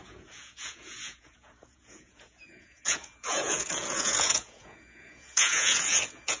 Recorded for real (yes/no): no